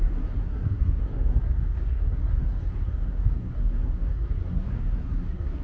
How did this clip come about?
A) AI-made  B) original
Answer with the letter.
A